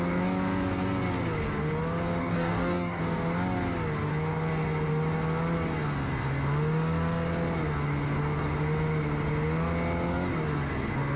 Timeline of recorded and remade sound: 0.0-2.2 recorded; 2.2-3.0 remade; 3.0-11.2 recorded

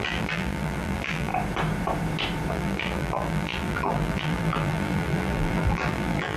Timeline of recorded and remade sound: 0.0-1.3 remade; 1.3-2.5 recorded; 2.5-6.4 remade

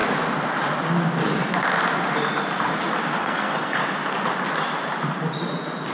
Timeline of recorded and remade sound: 0.0-3.2 recorded; 3.2-3.8 remade; 3.8-5.9 recorded